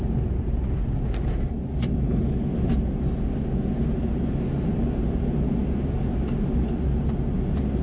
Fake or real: real